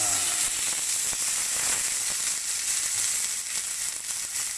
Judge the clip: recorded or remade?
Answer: recorded